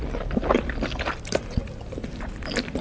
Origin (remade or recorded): recorded